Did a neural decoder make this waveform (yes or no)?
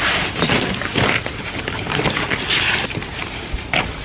no